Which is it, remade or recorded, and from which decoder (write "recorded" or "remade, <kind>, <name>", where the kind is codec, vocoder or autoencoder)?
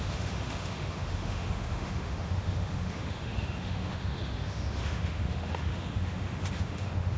remade, autoencoder, DAC-VAE